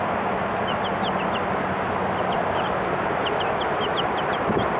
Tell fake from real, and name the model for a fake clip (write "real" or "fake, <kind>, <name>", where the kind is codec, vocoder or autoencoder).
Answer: real